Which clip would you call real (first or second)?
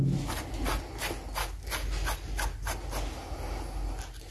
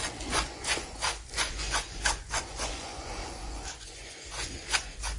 first